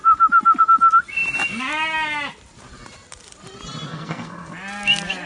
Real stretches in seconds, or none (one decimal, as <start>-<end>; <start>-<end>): 0.0-3.9; 4.5-5.3